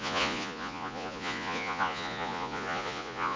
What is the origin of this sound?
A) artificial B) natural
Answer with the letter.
A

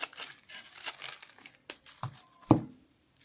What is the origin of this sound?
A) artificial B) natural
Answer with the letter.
B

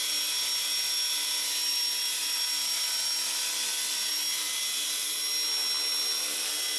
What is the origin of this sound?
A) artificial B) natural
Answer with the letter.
B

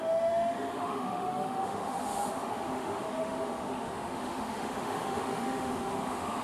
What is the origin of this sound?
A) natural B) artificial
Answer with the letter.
B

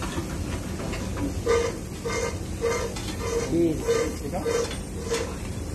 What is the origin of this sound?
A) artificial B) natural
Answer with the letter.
B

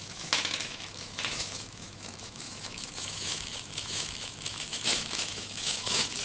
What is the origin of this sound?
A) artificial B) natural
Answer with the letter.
A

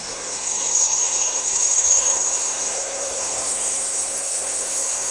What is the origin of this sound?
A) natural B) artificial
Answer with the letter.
B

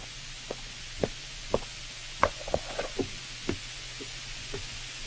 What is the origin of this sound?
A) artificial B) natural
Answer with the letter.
A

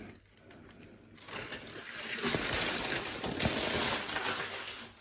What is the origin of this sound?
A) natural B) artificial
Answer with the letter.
A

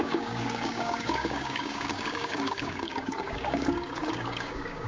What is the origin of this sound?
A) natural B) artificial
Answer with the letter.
B